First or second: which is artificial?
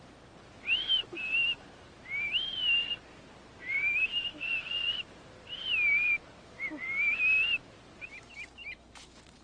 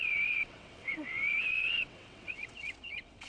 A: second